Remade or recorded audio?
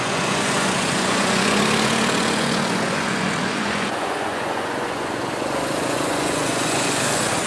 remade